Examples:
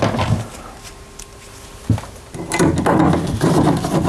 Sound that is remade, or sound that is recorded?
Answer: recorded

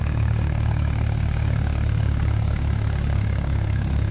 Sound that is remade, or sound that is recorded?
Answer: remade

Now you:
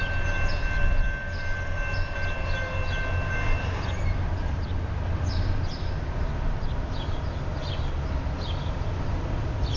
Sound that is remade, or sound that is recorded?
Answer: recorded